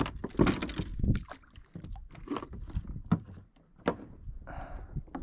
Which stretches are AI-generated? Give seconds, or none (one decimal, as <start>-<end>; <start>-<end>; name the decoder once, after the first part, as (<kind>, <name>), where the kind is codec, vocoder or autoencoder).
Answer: none